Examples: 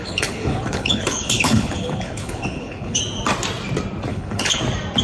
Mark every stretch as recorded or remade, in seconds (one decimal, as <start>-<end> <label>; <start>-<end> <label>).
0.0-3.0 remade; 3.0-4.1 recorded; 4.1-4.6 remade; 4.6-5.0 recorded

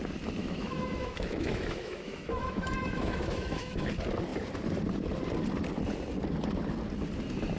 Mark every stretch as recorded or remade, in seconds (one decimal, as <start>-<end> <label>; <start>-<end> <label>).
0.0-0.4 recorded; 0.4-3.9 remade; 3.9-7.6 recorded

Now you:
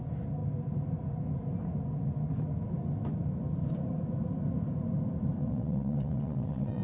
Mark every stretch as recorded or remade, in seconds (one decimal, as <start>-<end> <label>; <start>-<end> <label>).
0.0-5.4 recorded; 5.4-6.8 remade

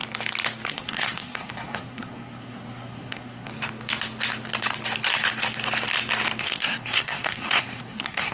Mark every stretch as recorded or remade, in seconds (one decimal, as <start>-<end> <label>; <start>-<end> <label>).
0.0-0.7 recorded; 0.7-3.5 remade; 3.5-6.4 recorded; 6.4-8.3 remade

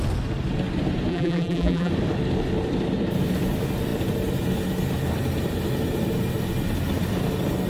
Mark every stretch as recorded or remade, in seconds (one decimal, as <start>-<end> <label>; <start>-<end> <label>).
0.0-1.1 recorded; 1.1-1.9 remade; 1.9-7.7 recorded

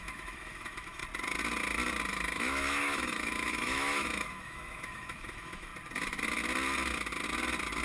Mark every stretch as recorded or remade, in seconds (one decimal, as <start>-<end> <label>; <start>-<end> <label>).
0.0-1.0 remade; 1.0-2.1 recorded; 2.1-5.7 remade; 5.7-7.8 recorded